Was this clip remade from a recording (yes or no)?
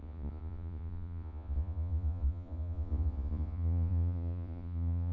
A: yes